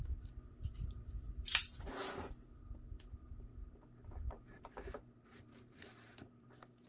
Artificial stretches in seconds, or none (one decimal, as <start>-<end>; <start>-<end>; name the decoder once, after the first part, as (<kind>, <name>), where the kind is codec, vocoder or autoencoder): 3.2-6.9 (vocoder, BigVGAN v2)